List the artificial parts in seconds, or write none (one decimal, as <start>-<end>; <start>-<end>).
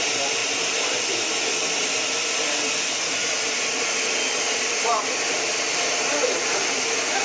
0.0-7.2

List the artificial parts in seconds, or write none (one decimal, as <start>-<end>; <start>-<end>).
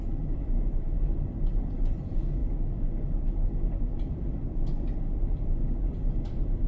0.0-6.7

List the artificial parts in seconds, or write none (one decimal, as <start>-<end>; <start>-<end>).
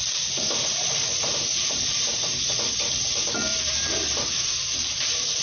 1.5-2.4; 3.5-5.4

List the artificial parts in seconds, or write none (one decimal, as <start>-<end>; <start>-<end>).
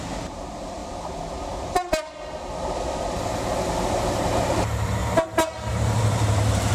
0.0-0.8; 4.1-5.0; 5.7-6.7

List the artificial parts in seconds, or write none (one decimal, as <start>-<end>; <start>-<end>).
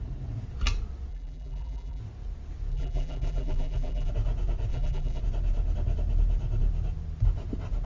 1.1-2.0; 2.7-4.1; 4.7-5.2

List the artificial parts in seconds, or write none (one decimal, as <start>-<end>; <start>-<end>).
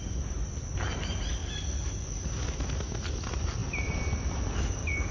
none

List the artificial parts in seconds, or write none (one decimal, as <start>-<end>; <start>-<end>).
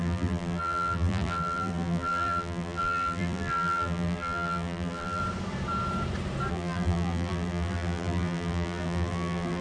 0.0-5.2; 6.5-9.6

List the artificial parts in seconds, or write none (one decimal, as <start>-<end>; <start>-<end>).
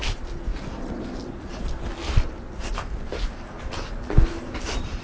0.5-1.5; 1.9-2.6